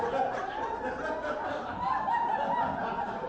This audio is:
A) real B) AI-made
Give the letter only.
A